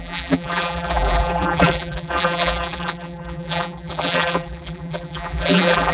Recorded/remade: remade